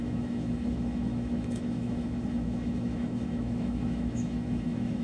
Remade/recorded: remade